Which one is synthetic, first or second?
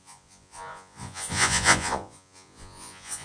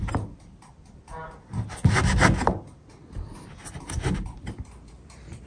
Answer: first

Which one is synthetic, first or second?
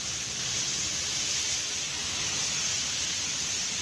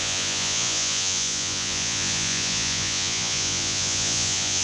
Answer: second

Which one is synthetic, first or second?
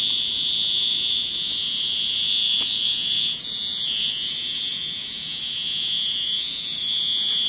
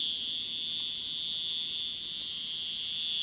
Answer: first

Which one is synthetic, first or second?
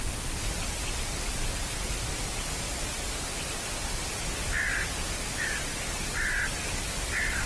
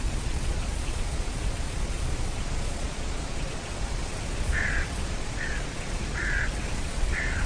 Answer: second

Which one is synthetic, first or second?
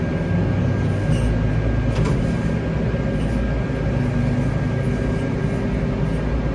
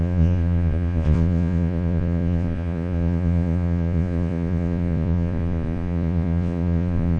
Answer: second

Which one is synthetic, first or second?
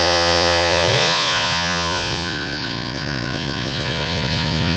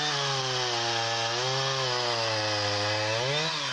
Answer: first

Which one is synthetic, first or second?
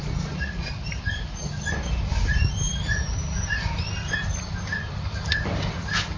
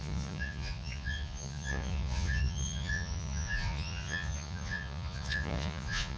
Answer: second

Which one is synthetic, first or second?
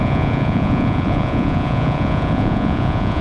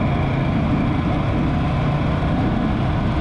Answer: first